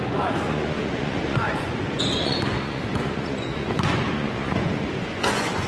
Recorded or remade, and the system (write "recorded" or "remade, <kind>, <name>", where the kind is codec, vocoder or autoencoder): remade, vocoder, Vocos